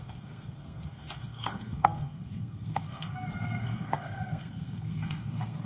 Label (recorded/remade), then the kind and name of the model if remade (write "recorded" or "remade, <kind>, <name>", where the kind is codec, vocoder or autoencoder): remade, codec, SNAC